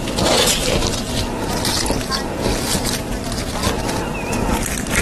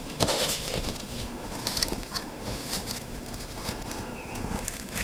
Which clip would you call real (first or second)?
first